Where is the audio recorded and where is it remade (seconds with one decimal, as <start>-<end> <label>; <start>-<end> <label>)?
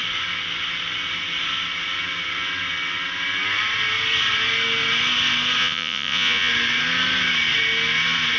0.0-5.6 recorded; 5.6-6.5 remade; 6.5-8.4 recorded